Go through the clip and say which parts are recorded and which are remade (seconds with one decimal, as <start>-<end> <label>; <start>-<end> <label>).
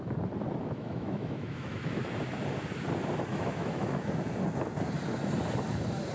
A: 0.0-0.6 recorded; 0.6-2.0 remade; 2.0-3.3 recorded; 3.3-4.1 remade; 4.1-6.1 recorded